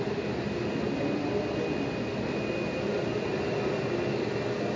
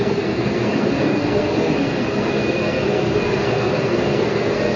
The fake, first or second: second